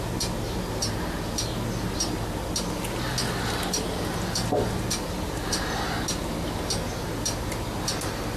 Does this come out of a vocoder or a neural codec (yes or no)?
no